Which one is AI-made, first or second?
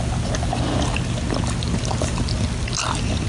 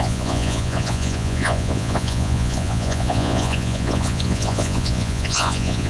second